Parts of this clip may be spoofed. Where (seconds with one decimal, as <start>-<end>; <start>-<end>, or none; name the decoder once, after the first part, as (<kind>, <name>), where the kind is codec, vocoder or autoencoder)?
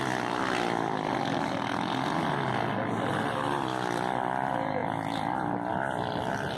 none